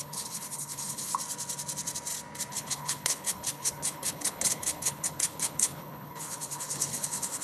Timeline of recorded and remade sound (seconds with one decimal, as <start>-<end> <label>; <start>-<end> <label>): 0.0-1.1 remade; 1.1-2.5 recorded; 2.5-7.4 remade